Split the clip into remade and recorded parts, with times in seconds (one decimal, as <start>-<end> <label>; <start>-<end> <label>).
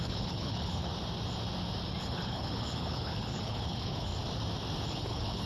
0.0-0.9 remade; 0.9-2.0 recorded; 2.0-4.1 remade; 4.1-4.9 recorded; 4.9-5.5 remade